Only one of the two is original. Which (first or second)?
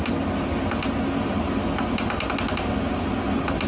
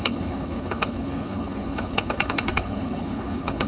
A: first